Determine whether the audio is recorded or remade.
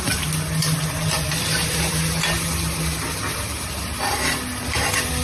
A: recorded